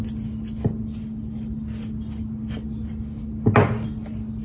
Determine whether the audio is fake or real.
real